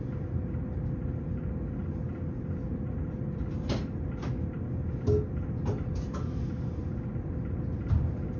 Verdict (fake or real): real